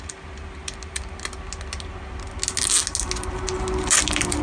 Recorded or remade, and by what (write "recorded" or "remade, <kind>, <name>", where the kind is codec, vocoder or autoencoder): recorded